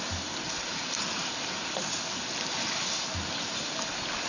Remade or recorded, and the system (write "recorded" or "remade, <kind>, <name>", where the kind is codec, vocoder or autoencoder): recorded